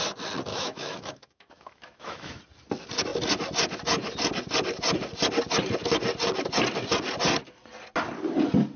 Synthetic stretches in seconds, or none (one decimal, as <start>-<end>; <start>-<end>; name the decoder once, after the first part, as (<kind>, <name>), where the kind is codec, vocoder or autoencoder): 0.5-2.4 (autoencoder, DAC-VAE)